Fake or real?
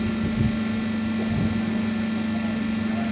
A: real